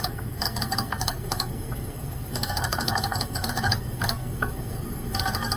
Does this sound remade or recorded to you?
remade